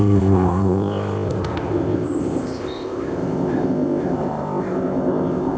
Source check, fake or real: fake